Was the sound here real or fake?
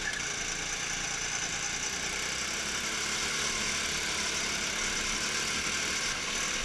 real